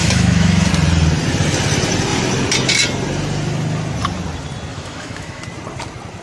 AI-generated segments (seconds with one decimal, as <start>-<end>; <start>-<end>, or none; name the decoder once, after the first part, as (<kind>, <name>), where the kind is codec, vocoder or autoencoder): 0.0-0.7 (autoencoder, DAC-VAE); 4.7-5.4